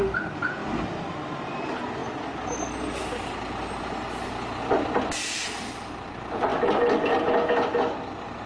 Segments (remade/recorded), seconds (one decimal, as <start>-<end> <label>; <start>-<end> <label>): 0.0-8.5 recorded